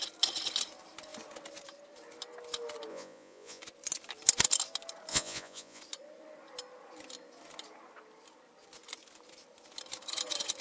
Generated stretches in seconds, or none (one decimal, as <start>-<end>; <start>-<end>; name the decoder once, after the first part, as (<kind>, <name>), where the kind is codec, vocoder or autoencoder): 2.9-3.6 (vocoder, Vocos); 5.1-5.8